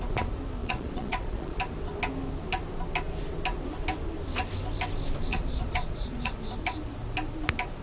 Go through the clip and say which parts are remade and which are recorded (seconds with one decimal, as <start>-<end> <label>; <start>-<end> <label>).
0.0-0.6 recorded; 0.6-1.6 remade; 1.6-5.3 recorded; 5.3-6.3 remade; 6.3-7.8 recorded